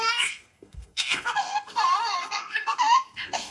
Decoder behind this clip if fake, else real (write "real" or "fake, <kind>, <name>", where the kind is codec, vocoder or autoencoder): fake, codec, SNAC